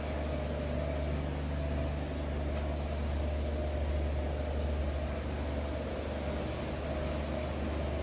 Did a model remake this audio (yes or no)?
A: no